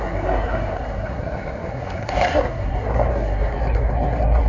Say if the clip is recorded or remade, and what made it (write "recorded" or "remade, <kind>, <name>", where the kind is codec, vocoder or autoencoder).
remade, codec, SNAC